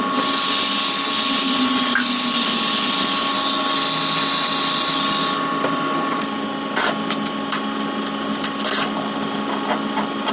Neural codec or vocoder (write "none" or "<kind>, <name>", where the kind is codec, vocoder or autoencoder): none